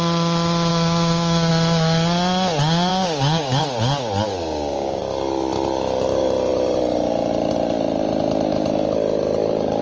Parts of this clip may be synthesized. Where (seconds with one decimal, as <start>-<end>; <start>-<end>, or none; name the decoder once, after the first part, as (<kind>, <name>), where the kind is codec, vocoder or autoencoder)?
0.7-1.5 (codec, DAC); 2.9-3.6; 4.3-5.0